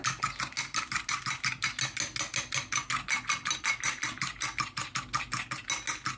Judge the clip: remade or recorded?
recorded